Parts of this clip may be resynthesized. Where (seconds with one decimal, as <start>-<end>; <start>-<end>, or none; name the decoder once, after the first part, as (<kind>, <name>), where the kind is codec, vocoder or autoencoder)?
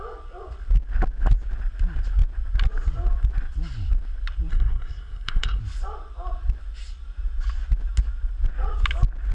4.5-5.6 (codec, SNAC)